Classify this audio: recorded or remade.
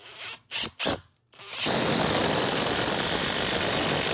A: recorded